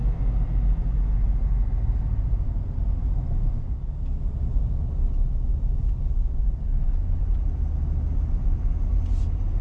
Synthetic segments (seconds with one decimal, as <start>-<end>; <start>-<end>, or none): none